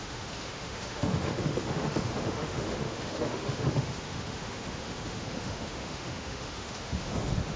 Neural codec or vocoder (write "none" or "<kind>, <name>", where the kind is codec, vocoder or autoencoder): autoencoder, DAC-VAE